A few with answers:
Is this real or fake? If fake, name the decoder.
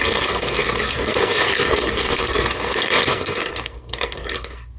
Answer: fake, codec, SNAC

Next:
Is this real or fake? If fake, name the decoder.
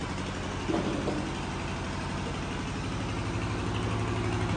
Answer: real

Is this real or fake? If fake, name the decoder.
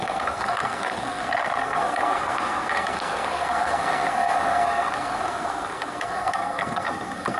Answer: fake, codec, SNAC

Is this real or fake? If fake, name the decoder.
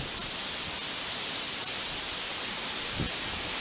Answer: real